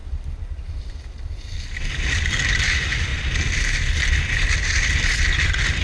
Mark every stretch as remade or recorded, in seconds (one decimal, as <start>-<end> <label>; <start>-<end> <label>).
0.0-0.8 recorded; 0.8-3.1 remade; 3.1-4.5 recorded; 4.5-5.8 remade